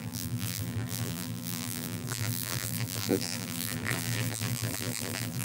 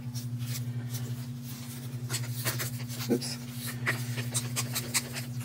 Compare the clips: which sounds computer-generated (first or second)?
first